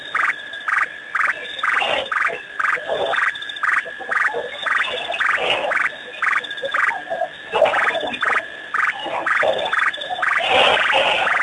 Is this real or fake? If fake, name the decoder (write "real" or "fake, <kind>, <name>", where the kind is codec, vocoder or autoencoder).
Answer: real